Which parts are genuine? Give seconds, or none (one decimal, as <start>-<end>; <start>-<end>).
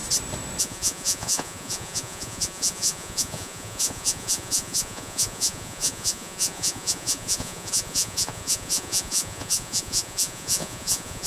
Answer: 0.0-0.6